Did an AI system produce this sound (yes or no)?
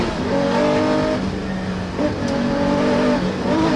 no